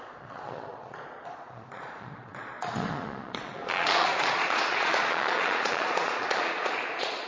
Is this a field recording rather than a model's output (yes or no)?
no